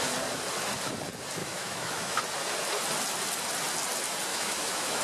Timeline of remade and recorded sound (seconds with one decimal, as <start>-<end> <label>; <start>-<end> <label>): 0.0-1.4 recorded; 1.4-2.2 remade; 2.2-4.3 recorded; 4.3-5.0 remade